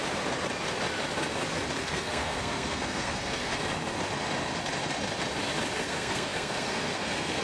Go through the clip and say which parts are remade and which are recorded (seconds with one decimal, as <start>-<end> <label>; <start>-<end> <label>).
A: 0.0-1.8 recorded; 1.8-3.5 remade; 3.5-5.8 recorded; 5.8-7.4 remade

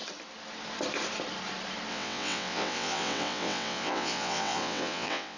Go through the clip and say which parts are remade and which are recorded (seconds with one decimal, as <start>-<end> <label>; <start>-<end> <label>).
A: 0.0-1.9 recorded; 1.9-5.4 remade

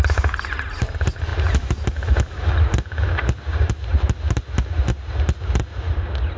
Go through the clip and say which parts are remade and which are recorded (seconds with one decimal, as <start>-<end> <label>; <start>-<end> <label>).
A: 0.0-6.4 recorded

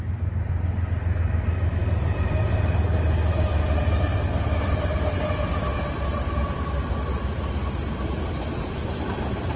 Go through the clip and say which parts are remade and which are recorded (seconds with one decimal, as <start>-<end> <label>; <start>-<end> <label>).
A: 0.0-9.6 recorded

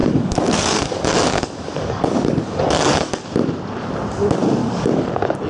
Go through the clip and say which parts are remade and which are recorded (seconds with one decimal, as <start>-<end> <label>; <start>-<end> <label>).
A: 0.0-3.3 remade; 3.3-4.6 recorded; 4.6-5.1 remade; 5.1-5.5 recorded

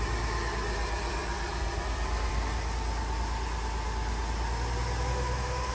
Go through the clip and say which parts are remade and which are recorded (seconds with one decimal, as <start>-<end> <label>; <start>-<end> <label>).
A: 0.0-5.1 recorded; 5.1-5.7 remade

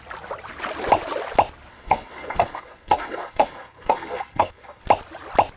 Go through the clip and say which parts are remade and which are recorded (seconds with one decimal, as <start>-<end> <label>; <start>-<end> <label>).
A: 0.0-1.7 recorded; 1.7-4.8 remade; 4.8-5.6 recorded